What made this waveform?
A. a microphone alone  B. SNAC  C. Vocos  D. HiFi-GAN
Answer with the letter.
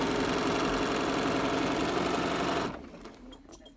A